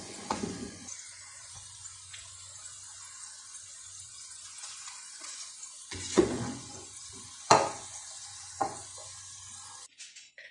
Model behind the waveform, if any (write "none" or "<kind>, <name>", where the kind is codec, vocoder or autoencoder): vocoder, Vocos